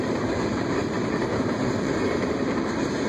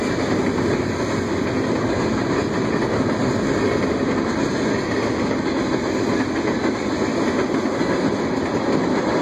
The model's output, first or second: first